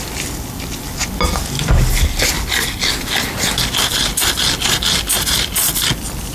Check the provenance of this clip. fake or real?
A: real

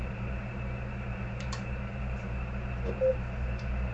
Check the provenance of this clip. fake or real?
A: fake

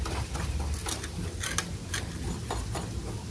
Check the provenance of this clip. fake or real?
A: real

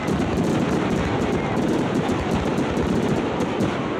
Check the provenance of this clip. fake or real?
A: real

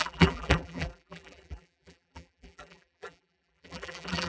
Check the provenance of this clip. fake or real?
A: fake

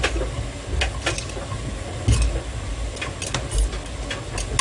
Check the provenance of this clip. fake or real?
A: real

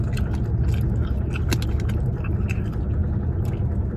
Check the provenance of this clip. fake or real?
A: real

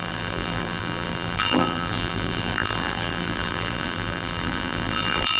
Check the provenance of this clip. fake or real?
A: fake